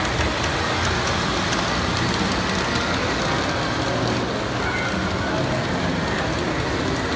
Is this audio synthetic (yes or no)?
no